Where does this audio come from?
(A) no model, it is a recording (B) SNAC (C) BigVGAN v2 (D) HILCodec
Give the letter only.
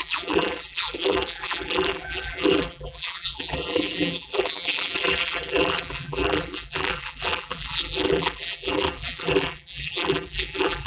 C